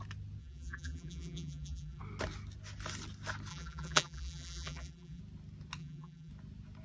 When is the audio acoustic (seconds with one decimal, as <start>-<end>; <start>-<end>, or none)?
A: 0.0-0.4; 2.0-3.5; 5.2-5.8; 6.3-6.8